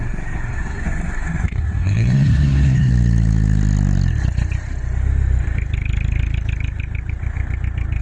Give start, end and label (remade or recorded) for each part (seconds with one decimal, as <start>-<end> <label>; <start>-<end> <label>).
0.0-2.9 remade; 2.9-8.0 recorded